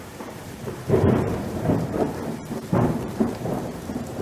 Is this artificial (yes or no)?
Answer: yes